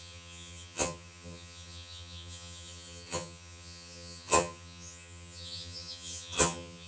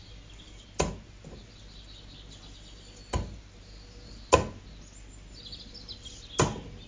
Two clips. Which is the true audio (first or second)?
second